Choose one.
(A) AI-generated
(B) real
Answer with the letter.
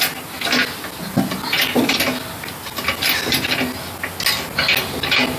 B